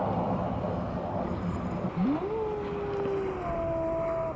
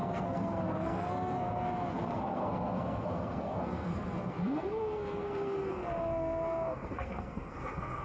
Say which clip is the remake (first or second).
second